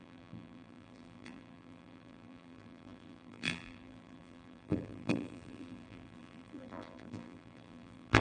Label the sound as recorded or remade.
remade